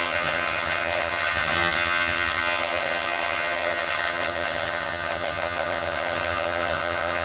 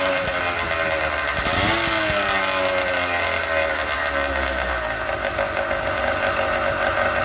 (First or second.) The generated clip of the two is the first